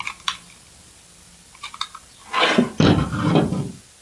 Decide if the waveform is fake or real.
fake